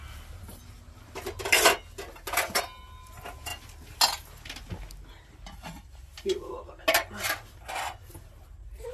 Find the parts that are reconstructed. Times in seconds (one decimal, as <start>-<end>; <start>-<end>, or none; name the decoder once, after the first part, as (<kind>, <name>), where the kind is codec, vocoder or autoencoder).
none